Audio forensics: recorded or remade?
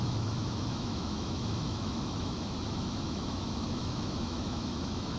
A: remade